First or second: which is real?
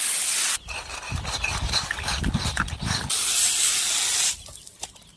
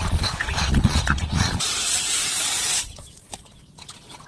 first